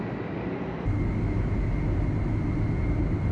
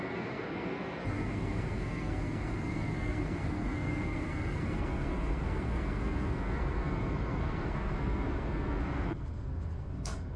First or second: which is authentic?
first